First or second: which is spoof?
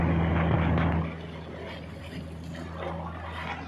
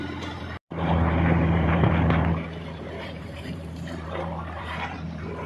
second